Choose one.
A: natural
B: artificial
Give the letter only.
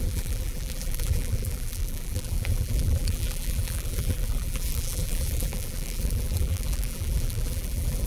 B